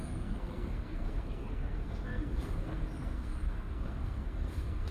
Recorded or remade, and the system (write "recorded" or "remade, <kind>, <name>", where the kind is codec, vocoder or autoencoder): remade, codec, SNAC